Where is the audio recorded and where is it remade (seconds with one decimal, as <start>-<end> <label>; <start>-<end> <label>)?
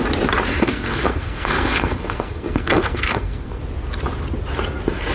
0.0-0.5 recorded; 0.5-3.6 remade; 3.6-5.1 recorded